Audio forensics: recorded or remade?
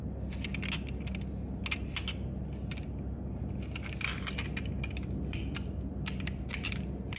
recorded